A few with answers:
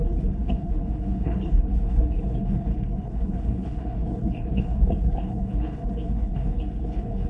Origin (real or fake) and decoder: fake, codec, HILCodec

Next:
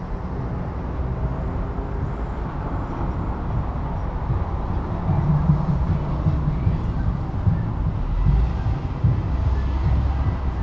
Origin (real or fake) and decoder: real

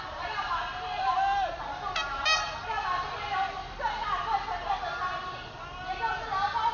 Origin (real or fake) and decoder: real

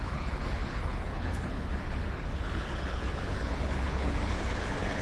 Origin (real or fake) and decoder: fake, codec, HILCodec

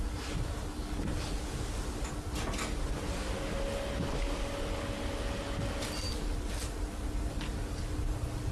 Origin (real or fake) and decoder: real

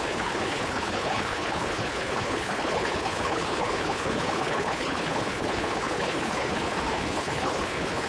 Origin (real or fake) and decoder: fake, codec, HILCodec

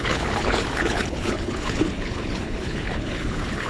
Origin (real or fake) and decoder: fake, codec, HILCodec